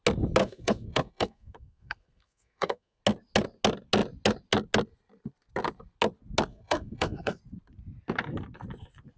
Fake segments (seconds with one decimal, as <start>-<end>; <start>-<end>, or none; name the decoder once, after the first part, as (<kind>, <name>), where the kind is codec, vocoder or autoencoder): 0.4-3.0 (codec, SNAC); 6.5-7.4